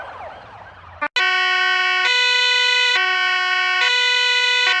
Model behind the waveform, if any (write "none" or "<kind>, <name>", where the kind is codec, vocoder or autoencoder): none